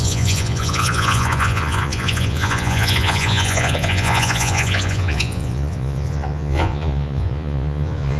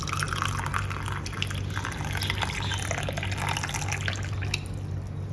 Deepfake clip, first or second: first